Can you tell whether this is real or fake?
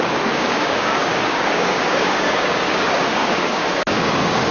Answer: fake